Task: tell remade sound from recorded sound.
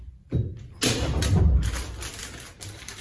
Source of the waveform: recorded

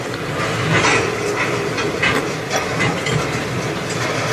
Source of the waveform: recorded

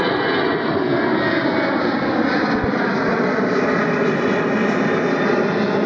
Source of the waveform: recorded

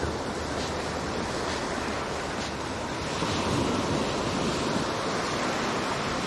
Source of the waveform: recorded